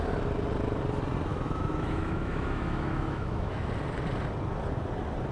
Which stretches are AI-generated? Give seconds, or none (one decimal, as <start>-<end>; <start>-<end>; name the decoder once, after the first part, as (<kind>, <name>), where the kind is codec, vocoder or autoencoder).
1.3-3.7 (autoencoder, DAC-VAE)